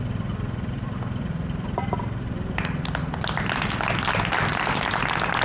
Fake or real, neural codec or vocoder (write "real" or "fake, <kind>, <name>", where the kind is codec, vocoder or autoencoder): fake, vocoder, BigVGAN v2